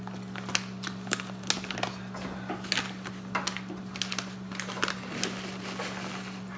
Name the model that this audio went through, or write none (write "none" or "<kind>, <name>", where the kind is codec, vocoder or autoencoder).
none